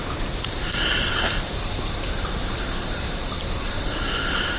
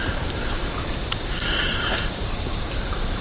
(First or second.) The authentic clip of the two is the first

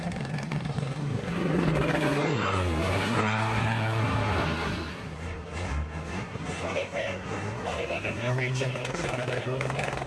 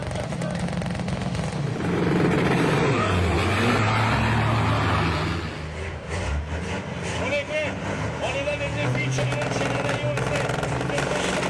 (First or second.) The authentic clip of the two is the second